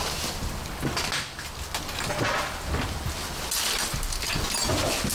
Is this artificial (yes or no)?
no